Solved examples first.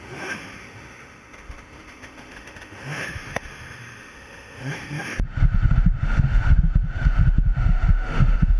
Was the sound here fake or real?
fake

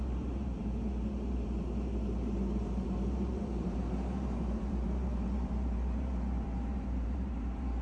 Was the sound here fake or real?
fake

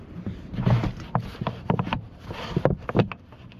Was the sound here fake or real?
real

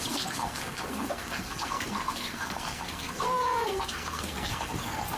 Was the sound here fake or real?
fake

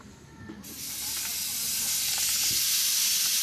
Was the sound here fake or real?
real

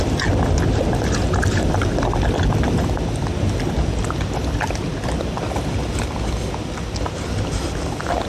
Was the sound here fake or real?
real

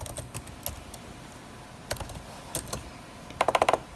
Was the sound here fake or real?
real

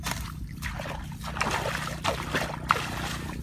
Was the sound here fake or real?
real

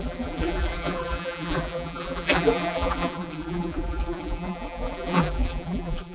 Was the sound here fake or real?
fake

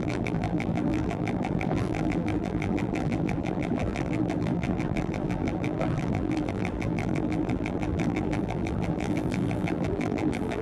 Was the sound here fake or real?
fake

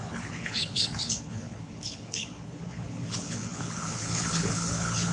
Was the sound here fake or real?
fake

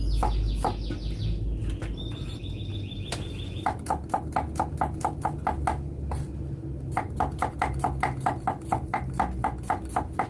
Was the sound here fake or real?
real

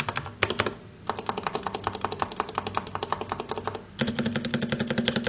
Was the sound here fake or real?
real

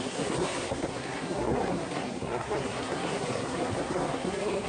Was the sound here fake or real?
fake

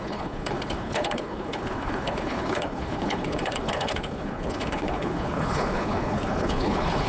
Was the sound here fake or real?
fake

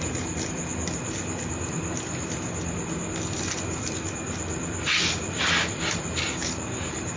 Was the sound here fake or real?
real